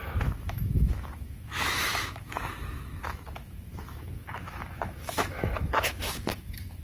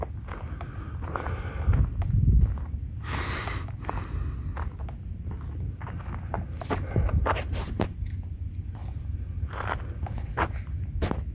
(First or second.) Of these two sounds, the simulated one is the first